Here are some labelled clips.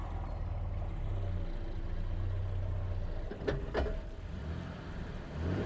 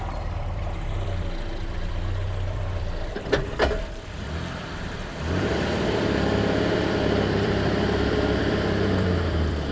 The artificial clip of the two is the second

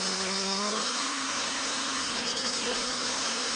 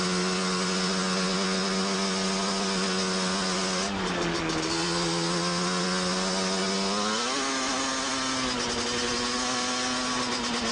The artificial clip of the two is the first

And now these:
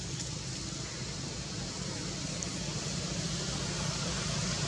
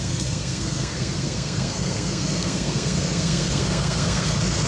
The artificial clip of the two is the second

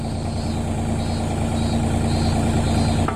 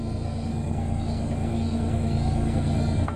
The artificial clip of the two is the second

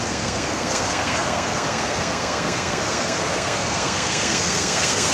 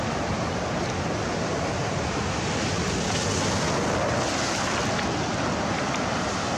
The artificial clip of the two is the first